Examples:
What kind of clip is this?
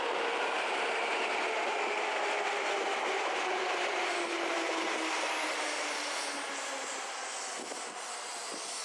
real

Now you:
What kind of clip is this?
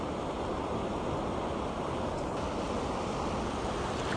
real